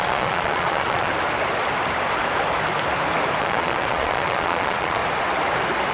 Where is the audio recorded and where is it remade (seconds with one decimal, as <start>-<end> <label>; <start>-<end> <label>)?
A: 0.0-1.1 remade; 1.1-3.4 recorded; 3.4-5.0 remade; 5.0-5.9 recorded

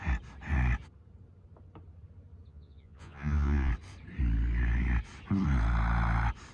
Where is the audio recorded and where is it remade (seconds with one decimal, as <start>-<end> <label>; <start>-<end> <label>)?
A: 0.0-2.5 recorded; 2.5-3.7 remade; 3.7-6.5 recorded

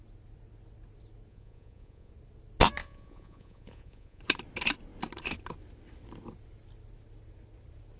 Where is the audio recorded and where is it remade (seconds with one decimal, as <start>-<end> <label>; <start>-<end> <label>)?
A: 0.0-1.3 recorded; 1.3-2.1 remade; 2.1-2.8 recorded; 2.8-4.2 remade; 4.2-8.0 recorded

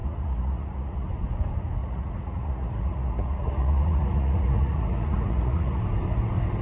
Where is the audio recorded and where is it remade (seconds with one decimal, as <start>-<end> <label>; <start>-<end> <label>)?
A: 0.0-1.1 remade; 1.1-1.8 recorded; 1.8-5.8 remade; 5.8-6.6 recorded